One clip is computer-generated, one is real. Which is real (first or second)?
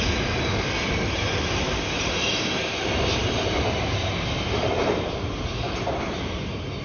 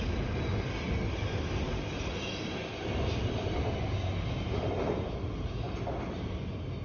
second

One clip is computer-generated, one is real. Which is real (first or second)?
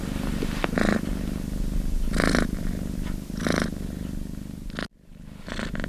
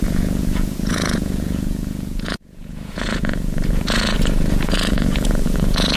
first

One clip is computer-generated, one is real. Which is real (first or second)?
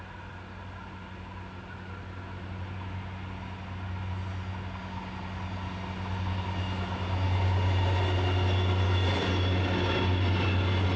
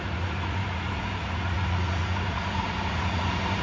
first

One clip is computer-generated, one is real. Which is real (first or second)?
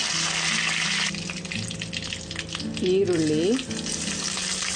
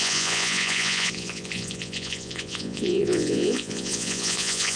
first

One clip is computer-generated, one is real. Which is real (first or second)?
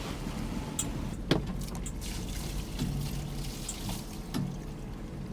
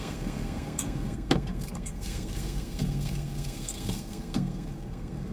first